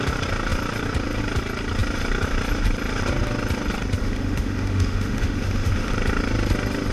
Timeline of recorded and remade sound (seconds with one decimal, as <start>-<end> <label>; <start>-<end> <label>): 0.0-4.0 recorded; 4.0-5.9 remade; 5.9-6.9 recorded